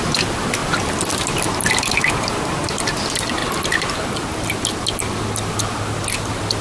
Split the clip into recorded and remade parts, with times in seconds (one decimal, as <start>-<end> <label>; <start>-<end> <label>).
0.0-6.6 recorded